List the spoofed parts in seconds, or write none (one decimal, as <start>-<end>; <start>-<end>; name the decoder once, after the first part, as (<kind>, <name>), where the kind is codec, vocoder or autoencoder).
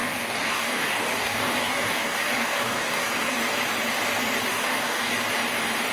0.0-3.4 (codec, DAC); 4.5-5.1